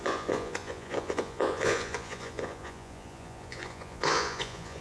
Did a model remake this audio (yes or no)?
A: yes